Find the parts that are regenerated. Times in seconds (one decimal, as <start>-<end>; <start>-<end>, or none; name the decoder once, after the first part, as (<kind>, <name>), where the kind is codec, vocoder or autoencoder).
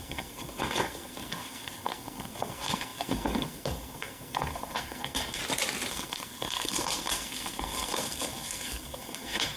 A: 0.0-5.4 (codec, SNAC); 5.9-9.6